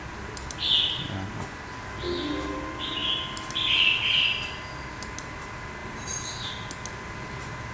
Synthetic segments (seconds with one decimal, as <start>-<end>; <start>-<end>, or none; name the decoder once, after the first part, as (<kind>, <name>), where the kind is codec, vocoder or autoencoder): 5.8-6.5 (vocoder, BigVGAN v2)